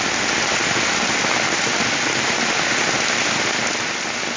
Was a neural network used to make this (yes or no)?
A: no